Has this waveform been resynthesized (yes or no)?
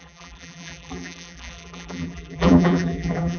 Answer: yes